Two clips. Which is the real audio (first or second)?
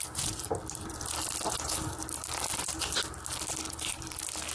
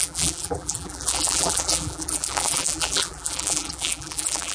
first